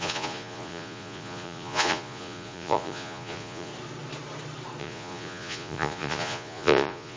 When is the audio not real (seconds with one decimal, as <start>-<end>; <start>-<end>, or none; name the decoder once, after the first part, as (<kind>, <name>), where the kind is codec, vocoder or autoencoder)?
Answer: 0.0-3.7 (vocoder, Vocos); 4.8-7.2